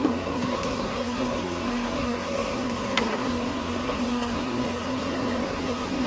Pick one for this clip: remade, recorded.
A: remade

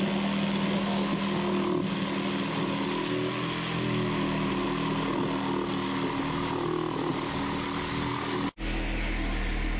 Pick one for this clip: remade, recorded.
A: recorded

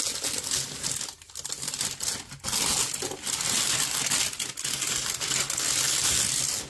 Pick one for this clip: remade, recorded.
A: recorded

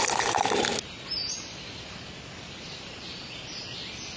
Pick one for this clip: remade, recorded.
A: recorded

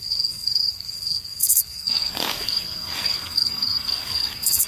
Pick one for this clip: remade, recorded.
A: remade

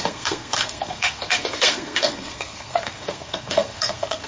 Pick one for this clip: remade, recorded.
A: remade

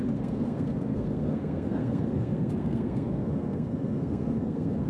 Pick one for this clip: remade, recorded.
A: remade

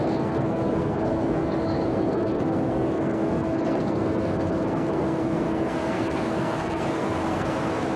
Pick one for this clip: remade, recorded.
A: remade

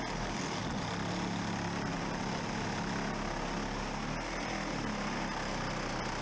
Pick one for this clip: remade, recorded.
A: recorded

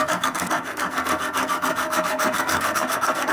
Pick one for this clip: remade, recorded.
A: remade